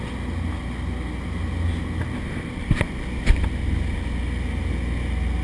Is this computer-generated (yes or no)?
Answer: no